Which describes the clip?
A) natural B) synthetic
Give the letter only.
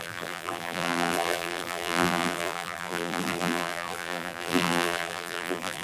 B